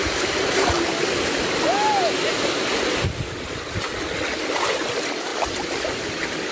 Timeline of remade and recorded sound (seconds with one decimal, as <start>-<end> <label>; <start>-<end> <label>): 0.0-6.5 recorded